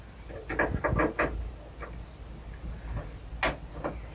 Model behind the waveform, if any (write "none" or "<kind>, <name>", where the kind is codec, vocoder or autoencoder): none